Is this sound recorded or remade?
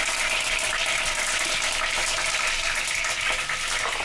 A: recorded